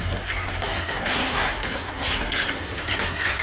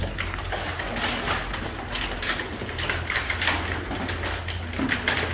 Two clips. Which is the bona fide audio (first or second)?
second